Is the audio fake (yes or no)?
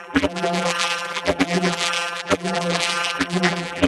yes